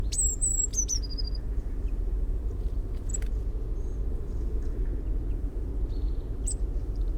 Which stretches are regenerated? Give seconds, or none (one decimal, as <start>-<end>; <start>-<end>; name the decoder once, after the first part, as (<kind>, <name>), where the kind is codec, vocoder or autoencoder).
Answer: 0.0-0.5 (vocoder, BigVGAN v2); 1.4-3.1; 4.1-4.8; 5.3-5.7; 6.8-7.2